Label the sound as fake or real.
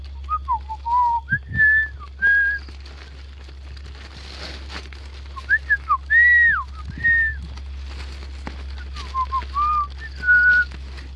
real